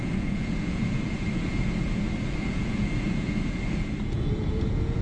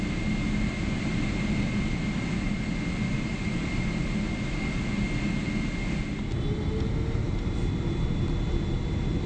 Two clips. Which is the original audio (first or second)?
second